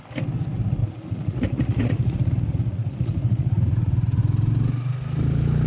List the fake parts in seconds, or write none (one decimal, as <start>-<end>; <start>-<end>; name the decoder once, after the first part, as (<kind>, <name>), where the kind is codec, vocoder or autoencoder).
0.8-4.2 (vocoder, Vocos)